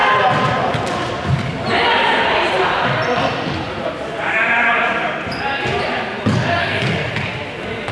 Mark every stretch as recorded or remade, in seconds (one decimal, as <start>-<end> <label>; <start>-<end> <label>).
0.0-6.6 recorded; 6.6-7.1 remade; 7.1-7.9 recorded